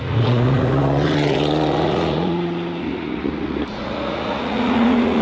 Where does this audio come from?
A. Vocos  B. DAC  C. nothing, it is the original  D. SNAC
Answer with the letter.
A